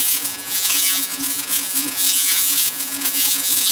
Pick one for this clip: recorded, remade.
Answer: remade